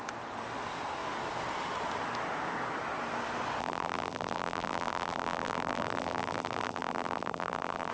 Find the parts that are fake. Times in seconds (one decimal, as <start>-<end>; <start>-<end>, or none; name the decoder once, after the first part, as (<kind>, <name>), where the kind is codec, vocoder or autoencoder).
3.6-7.9 (vocoder, BigVGAN v2)